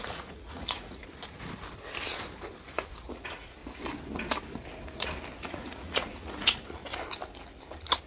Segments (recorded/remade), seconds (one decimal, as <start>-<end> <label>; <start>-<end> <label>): 0.0-1.0 remade; 1.0-3.1 recorded; 3.1-3.6 remade; 3.6-5.4 recorded; 5.4-6.8 remade; 6.8-8.1 recorded